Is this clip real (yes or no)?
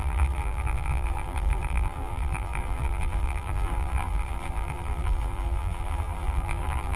no